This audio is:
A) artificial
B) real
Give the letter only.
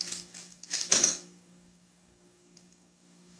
A